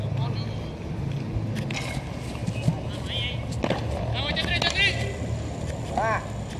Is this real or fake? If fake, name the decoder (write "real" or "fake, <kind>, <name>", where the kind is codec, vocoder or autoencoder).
real